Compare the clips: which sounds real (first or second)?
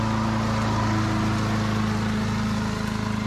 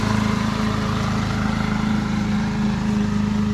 first